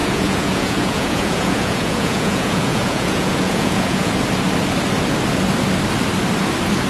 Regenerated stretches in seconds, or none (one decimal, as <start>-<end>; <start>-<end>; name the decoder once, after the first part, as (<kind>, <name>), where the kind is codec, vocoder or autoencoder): 0.0-4.1 (vocoder, Vocos)